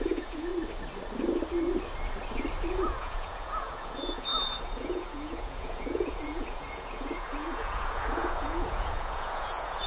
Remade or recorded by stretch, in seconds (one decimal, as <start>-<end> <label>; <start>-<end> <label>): 0.0-0.5 remade; 0.5-2.7 recorded; 2.7-9.9 remade